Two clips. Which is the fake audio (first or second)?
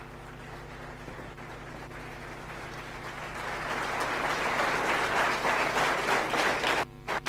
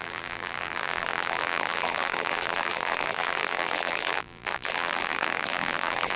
second